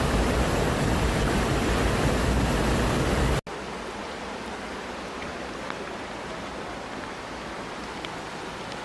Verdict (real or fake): real